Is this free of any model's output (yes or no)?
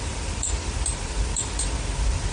no